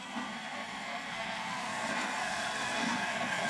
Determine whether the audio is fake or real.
fake